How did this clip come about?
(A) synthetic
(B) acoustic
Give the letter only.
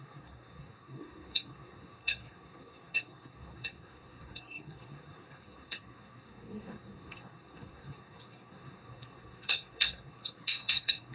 A